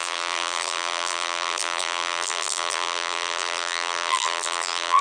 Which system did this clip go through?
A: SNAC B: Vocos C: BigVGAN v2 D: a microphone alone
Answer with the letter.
C